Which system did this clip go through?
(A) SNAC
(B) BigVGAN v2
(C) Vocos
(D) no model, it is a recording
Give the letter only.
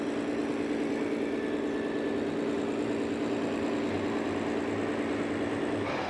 D